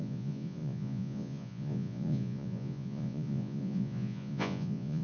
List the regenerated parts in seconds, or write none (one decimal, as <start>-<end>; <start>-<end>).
0.0-5.0